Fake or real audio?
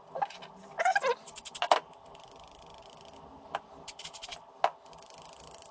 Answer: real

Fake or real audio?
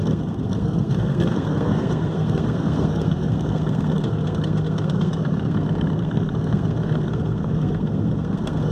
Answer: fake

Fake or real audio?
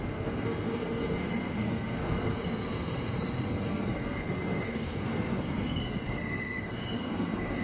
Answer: fake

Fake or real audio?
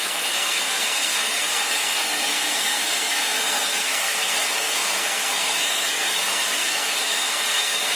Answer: fake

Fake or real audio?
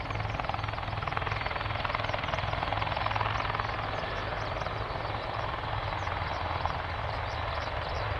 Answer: real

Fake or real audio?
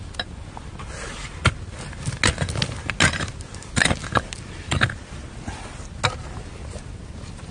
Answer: real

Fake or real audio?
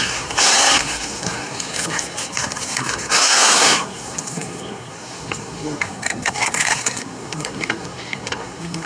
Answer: fake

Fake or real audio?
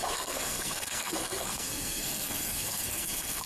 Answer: fake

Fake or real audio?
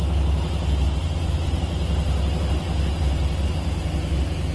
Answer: real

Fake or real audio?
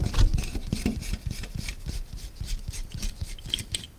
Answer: real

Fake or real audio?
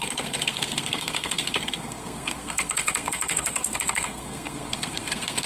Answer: fake